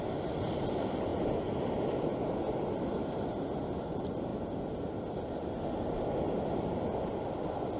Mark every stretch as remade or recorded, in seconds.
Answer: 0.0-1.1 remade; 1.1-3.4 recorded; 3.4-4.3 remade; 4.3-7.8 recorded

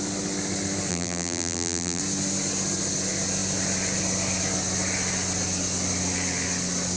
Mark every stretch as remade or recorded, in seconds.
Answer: 0.0-0.9 recorded; 0.9-2.0 remade; 2.0-7.0 recorded